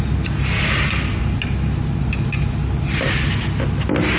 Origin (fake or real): real